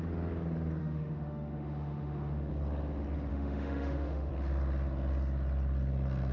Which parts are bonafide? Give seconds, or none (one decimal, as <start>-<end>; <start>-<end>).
0.0-0.8; 2.5-3.3; 4.3-6.3